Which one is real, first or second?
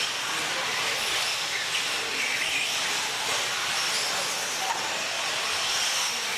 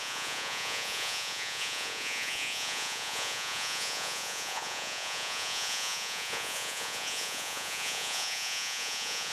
first